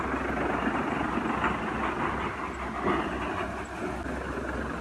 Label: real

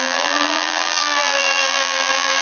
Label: fake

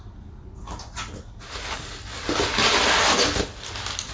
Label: real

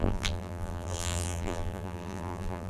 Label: fake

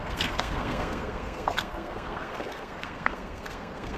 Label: fake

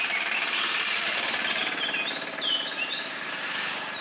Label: fake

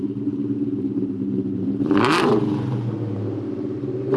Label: fake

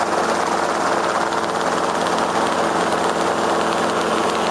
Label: real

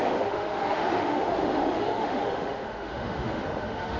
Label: fake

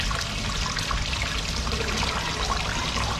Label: real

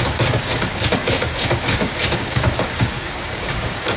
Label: fake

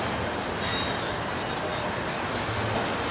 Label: real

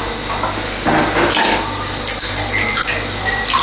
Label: real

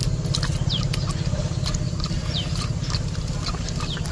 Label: real